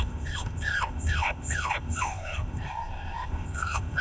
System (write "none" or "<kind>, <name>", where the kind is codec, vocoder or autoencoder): codec, ZipCodec